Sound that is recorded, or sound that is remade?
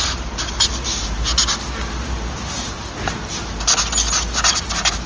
recorded